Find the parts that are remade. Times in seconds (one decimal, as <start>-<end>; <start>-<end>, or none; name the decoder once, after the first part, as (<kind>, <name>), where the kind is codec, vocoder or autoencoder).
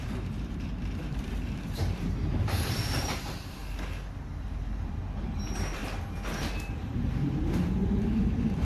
0.0-3.6 (vocoder, BigVGAN v2); 4.9-5.8; 6.4-8.6